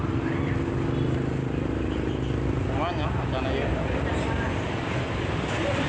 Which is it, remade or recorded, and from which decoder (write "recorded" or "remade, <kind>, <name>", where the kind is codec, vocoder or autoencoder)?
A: recorded